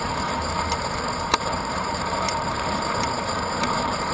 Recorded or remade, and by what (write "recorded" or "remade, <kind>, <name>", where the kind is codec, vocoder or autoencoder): remade, vocoder, BigVGAN v2